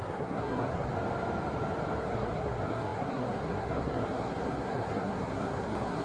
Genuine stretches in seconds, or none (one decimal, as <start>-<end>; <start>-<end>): 0.9-2.0